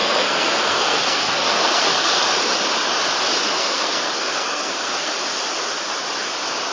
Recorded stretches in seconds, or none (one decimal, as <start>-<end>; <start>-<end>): 2.2-3.6; 5.1-6.7